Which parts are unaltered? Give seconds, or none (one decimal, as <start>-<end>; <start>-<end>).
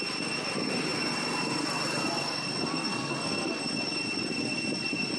0.0-2.7; 3.6-5.2